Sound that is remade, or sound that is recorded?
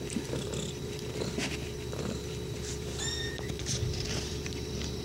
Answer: remade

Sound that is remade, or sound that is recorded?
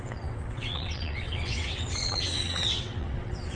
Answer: remade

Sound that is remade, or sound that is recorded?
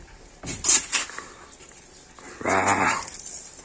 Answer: recorded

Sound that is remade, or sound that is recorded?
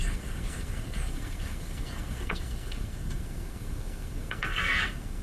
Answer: remade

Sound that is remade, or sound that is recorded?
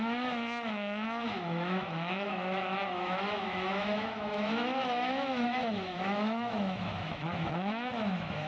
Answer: remade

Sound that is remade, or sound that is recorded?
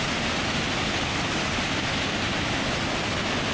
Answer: recorded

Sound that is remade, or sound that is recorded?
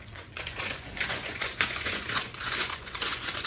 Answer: remade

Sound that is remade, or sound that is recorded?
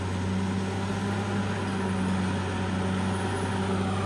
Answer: recorded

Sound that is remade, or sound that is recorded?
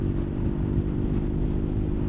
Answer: recorded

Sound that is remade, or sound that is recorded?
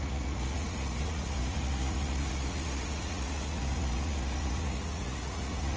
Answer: remade